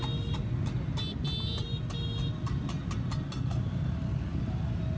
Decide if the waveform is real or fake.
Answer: real